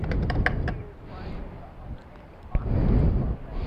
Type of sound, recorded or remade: recorded